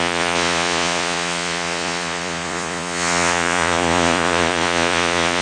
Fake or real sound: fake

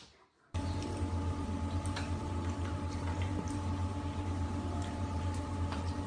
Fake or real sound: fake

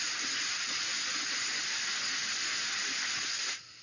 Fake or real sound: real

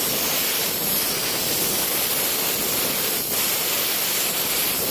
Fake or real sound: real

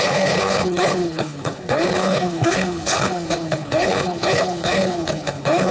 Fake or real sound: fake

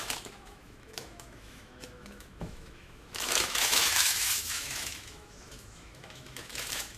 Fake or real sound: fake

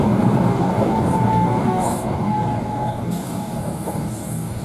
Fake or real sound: fake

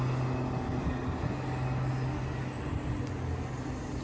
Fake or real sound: real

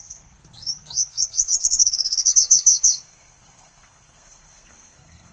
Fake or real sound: fake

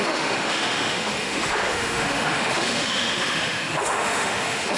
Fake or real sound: fake